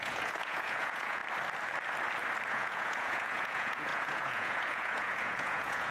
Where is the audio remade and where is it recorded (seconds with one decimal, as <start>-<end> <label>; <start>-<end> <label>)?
0.0-1.2 remade; 1.2-2.5 recorded; 2.5-5.9 remade